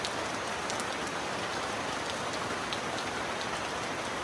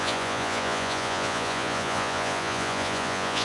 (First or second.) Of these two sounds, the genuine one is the first